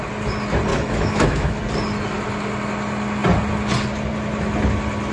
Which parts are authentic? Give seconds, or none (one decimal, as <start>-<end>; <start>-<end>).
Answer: 0.0-0.7; 1.6-5.1